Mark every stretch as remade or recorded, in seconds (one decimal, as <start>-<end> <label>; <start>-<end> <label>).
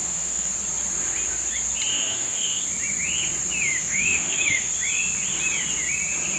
0.0-0.5 remade; 0.5-1.9 recorded; 1.9-2.6 remade; 2.6-3.8 recorded; 3.8-4.7 remade; 4.7-6.4 recorded